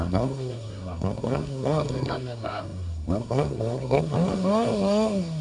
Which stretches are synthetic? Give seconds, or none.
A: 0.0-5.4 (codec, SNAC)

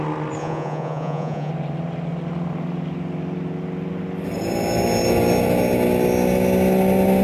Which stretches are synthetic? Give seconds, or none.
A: 0.4-1.5 (vocoder, Vocos)

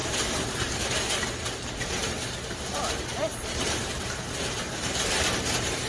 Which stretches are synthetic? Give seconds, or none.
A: 1.8-5.9 (vocoder, BigVGAN v2)

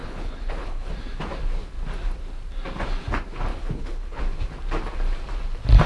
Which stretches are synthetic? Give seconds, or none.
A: 0.0-0.9 (codec, HILCodec); 3.5-4.2

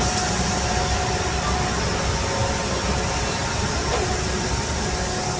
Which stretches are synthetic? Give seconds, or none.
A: none